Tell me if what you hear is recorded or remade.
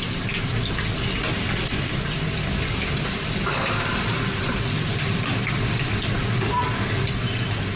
remade